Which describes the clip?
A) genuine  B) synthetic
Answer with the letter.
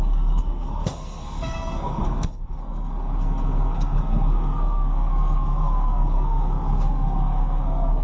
B